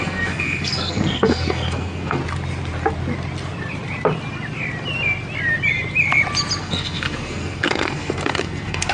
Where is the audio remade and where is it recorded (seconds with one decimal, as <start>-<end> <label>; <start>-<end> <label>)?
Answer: 0.0-2.2 remade; 2.2-6.6 recorded; 6.6-8.9 remade